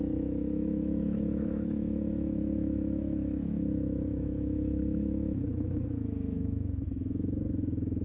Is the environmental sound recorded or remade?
remade